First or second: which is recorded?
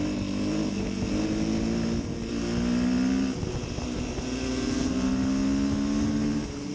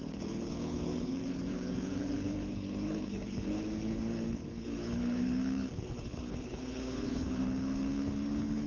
first